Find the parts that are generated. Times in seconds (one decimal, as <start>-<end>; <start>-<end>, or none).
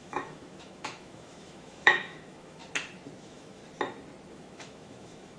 0.0-2.6; 3.2-3.6; 4.3-5.4